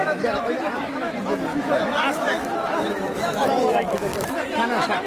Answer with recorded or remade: remade